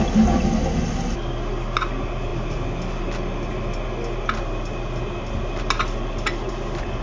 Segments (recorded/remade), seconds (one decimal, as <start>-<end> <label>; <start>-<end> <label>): 0.0-7.0 recorded

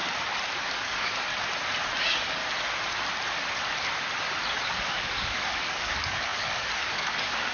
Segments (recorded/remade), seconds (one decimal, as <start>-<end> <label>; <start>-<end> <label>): 0.0-0.6 recorded; 0.6-1.3 remade; 1.3-2.0 recorded; 2.0-2.4 remade; 2.4-4.7 recorded; 4.7-7.5 remade

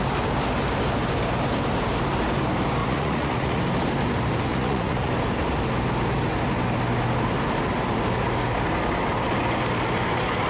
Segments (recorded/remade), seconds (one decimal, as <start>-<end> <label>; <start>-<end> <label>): 0.0-2.8 recorded; 2.8-3.6 remade; 3.6-4.5 recorded; 4.5-5.1 remade; 5.1-10.5 recorded

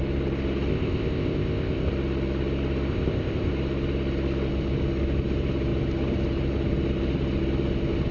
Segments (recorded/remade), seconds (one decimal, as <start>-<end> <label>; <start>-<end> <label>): 0.0-0.7 recorded; 0.7-1.9 remade; 1.9-2.9 recorded; 2.9-3.5 remade; 3.5-8.1 recorded

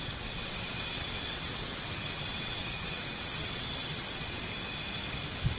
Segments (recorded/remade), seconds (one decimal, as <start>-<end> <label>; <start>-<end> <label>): 0.0-4.4 remade; 4.4-5.6 recorded

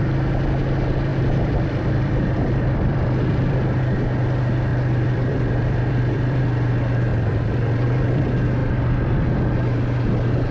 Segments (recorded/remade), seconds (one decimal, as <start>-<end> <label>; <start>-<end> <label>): 0.0-1.1 recorded; 1.1-3.8 remade; 3.8-4.7 recorded; 4.7-6.4 remade; 6.4-7.1 recorded; 7.1-8.2 remade; 8.2-10.5 recorded

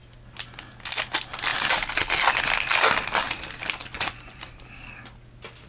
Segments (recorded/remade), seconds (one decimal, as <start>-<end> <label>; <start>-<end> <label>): 0.0-3.8 recorded; 3.8-4.4 remade; 4.4-5.7 recorded

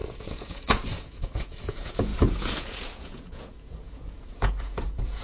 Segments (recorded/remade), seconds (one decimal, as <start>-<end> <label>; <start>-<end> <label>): 0.0-5.2 remade